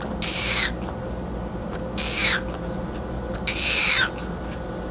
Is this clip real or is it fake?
real